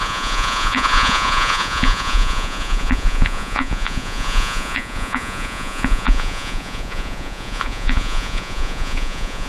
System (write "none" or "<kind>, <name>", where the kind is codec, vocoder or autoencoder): vocoder, Vocos